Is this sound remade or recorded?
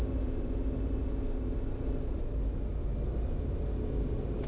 recorded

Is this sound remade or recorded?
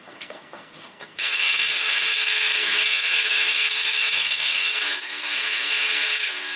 remade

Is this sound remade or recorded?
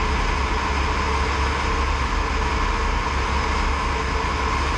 recorded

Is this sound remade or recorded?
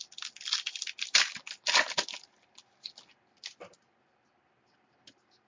recorded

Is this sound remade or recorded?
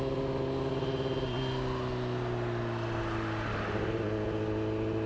recorded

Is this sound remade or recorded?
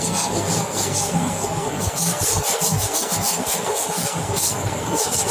remade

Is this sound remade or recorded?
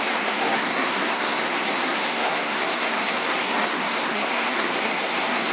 remade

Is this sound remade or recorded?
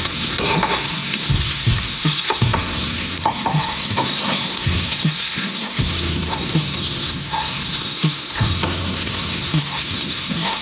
remade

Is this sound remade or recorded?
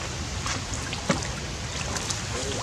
recorded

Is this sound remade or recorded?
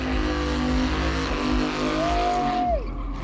recorded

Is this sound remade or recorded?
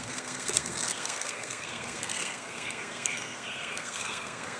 remade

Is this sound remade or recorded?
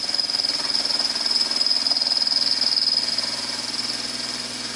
recorded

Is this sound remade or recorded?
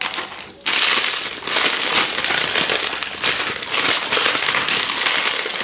recorded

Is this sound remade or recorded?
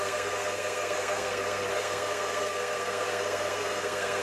remade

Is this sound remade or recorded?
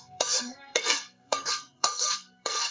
remade